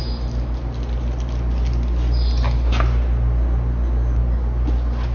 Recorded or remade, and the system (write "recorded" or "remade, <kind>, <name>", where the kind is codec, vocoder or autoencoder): recorded